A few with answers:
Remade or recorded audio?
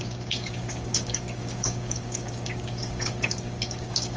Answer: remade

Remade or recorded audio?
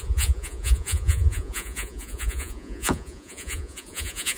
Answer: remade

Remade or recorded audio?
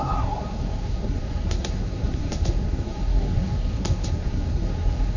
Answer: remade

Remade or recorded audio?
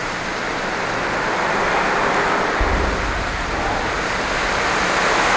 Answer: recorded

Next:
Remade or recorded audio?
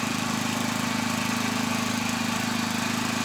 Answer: recorded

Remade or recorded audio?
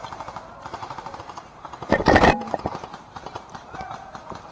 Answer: remade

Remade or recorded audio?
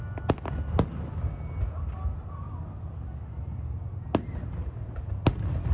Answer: recorded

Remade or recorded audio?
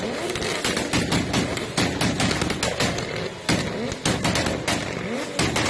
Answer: recorded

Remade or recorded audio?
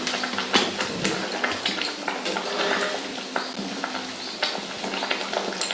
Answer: recorded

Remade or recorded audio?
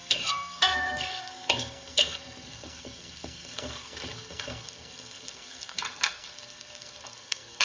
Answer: remade